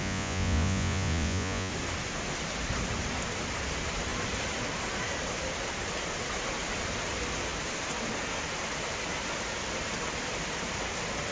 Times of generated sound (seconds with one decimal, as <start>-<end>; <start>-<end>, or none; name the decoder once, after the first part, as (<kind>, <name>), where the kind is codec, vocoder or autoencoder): 0.0-1.7 (vocoder, Vocos)